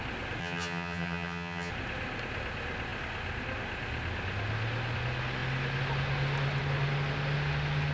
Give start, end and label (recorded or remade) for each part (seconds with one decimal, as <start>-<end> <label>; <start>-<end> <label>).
0.0-0.4 recorded; 0.4-1.7 remade; 1.7-7.9 recorded